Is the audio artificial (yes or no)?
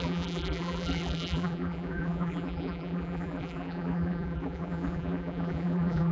yes